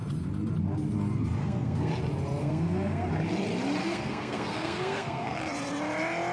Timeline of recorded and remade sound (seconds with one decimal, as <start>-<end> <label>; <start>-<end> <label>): 0.0-1.4 recorded; 1.4-1.9 remade; 1.9-2.4 recorded; 2.4-3.1 remade; 3.1-3.8 recorded; 3.8-5.4 remade; 5.4-6.3 recorded